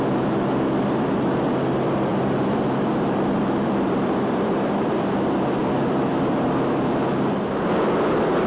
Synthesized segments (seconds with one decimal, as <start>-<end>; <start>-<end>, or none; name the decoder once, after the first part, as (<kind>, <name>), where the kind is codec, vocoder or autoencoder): 2.1-4.9 (vocoder, BigVGAN v2); 5.6-6.7